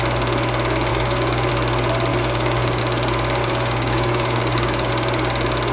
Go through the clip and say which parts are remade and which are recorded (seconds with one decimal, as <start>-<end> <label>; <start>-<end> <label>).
0.0-0.9 recorded; 0.9-1.5 remade; 1.5-2.1 recorded; 2.1-2.8 remade; 2.8-3.4 recorded; 3.4-4.9 remade; 4.9-5.7 recorded